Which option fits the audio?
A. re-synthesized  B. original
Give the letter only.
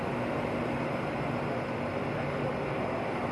B